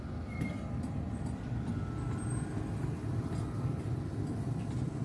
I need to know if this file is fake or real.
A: real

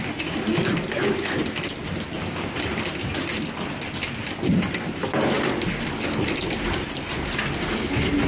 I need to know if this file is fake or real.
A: real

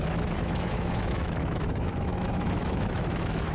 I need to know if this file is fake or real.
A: fake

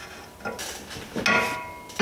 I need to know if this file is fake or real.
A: real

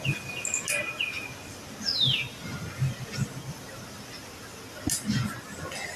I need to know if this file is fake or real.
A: real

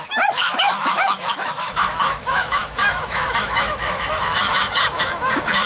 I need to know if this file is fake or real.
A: fake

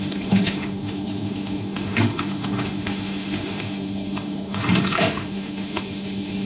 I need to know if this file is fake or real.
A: fake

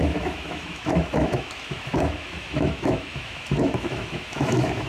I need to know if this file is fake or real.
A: fake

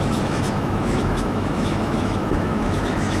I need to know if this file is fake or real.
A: fake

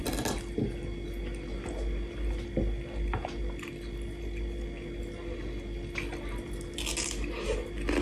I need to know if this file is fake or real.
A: real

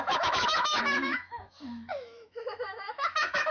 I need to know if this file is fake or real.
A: fake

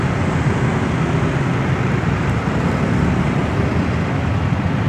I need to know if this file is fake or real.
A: real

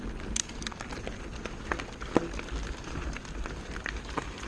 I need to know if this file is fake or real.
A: real